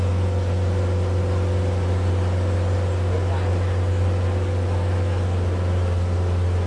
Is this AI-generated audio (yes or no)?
no